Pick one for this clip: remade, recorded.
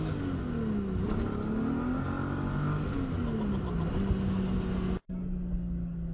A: recorded